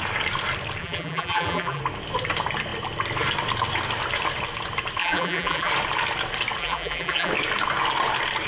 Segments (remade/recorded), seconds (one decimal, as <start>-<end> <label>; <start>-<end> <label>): 0.0-0.8 recorded; 0.8-1.8 remade; 1.8-5.0 recorded; 5.0-5.7 remade; 5.7-6.6 recorded; 6.6-7.3 remade; 7.3-8.5 recorded